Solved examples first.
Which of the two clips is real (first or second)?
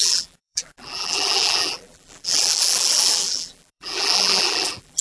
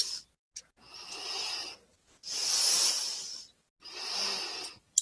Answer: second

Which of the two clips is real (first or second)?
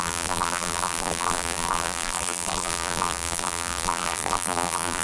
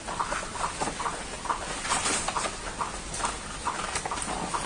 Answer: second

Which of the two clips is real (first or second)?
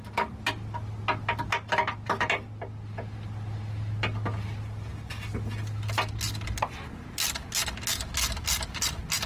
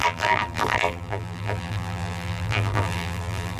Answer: first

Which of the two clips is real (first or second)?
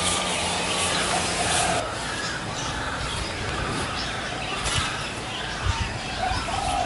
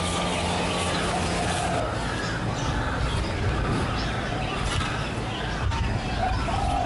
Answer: second